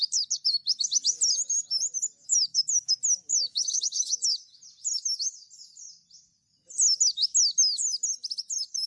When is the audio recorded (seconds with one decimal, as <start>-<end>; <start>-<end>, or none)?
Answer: 0.0-2.2; 2.9-3.3; 4.3-8.9